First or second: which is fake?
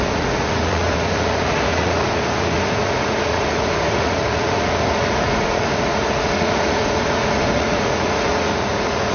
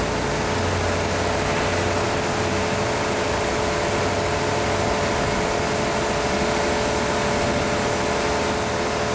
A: first